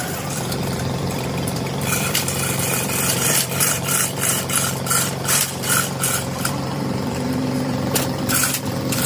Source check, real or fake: fake